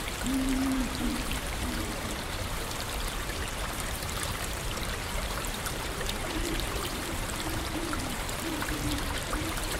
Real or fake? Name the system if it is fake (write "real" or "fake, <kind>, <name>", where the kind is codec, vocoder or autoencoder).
fake, vocoder, BigVGAN v2